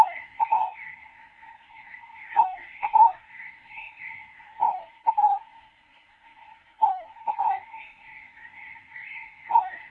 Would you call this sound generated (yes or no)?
yes